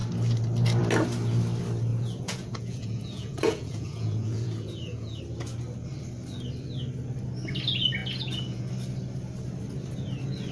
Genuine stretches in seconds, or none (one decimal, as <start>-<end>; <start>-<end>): 0.0-1.9; 5.2-8.0; 8.7-10.5